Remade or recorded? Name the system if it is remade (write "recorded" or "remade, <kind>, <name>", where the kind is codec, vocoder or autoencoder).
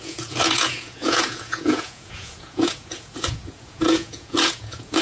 remade, vocoder, Vocos